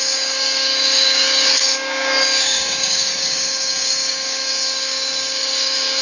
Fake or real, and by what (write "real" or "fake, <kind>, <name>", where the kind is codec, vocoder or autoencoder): fake, codec, DAC